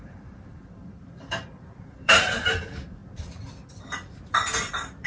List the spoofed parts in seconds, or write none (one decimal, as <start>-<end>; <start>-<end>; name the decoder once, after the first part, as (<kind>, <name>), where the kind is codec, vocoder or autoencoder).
0.0-3.0 (vocoder, BigVGAN v2); 3.7-5.1